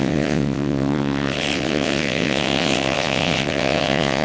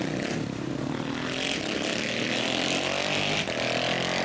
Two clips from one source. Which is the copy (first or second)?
first